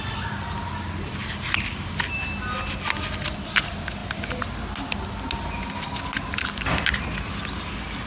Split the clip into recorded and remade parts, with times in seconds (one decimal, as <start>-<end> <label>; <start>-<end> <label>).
0.0-8.1 recorded